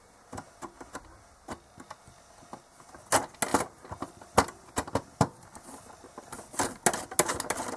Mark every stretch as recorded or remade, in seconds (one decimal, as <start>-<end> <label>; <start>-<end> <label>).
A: 0.0-3.5 recorded; 3.5-6.6 remade; 6.6-7.8 recorded